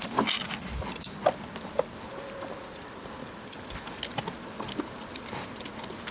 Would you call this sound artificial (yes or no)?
no